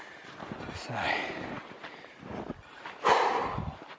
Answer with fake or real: real